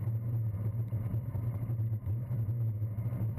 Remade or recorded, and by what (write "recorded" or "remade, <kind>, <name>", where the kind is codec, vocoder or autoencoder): remade, vocoder, BigVGAN v2